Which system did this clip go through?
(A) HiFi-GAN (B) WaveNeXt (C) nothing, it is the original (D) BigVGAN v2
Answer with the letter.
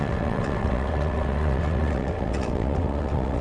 B